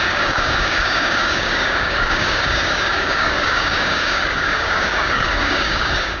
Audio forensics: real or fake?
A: fake